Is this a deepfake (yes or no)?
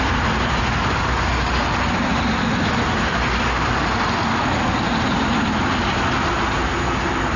no